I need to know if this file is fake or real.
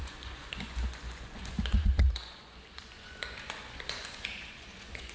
fake